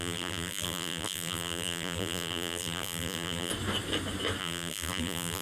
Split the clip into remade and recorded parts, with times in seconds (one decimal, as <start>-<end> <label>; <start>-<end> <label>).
0.0-3.5 remade; 3.5-4.4 recorded; 4.4-5.4 remade